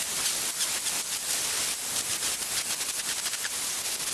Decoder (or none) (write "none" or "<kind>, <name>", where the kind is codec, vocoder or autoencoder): none